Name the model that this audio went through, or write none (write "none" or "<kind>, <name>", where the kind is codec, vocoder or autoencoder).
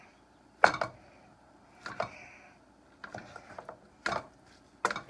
none